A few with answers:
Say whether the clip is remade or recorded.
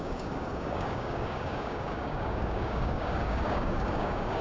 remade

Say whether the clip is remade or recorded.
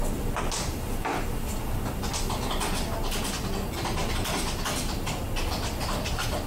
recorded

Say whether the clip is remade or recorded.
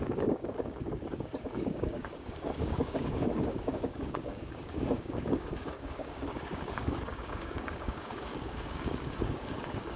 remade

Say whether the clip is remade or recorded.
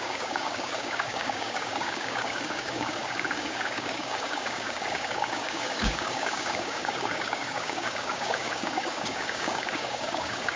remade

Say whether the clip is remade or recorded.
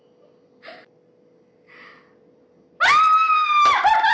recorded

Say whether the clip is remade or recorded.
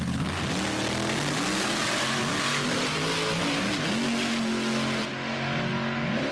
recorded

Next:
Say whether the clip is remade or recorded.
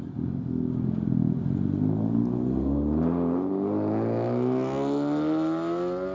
recorded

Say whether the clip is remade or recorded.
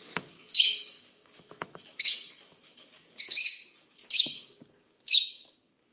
remade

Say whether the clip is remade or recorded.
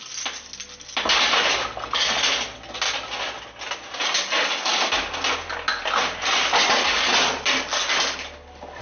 recorded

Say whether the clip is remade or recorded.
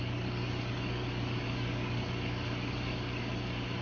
remade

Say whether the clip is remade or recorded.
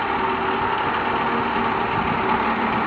recorded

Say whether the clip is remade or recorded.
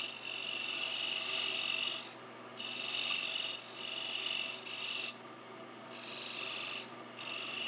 recorded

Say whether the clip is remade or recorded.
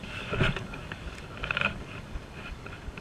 remade